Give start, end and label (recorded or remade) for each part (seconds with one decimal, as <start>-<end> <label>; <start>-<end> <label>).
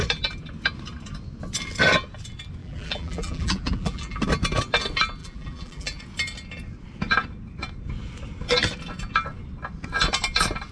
0.0-2.6 recorded; 2.6-4.2 remade; 4.2-5.2 recorded; 5.2-6.0 remade; 6.0-10.7 recorded